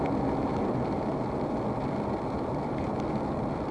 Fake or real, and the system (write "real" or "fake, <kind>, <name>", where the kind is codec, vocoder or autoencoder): real